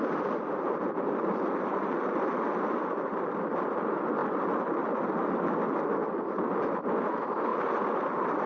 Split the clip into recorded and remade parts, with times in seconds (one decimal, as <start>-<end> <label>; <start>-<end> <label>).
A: 0.0-4.2 recorded; 4.2-5.6 remade; 5.6-8.5 recorded